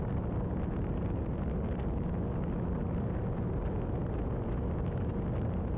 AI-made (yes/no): no